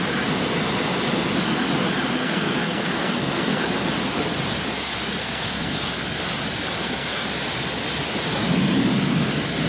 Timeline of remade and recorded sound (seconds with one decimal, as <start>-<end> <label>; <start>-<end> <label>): 0.0-2.2 recorded; 2.2-3.6 remade; 3.6-5.2 recorded; 5.2-5.9 remade; 5.9-6.8 recorded; 6.8-7.3 remade; 7.3-9.7 recorded